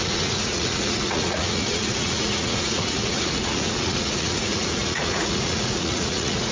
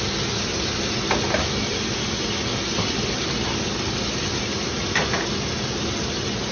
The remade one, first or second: first